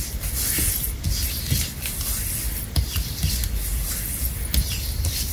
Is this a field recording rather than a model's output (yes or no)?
yes